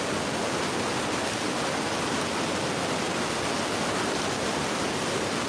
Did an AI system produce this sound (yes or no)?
no